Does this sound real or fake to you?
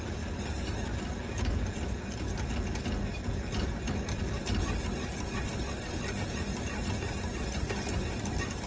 real